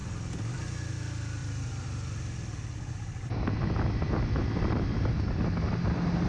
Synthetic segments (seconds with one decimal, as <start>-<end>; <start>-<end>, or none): 1.4-5.2